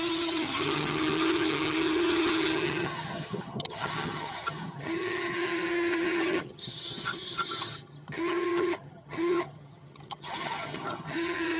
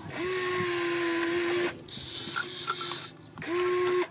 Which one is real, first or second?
second